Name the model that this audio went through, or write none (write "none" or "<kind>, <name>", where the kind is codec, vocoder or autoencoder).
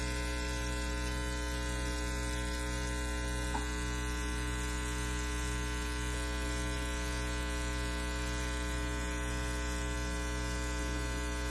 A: none